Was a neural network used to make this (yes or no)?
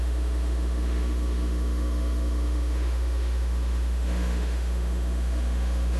yes